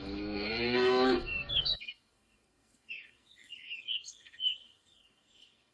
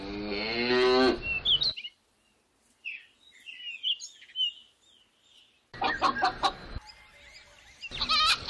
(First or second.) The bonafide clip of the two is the second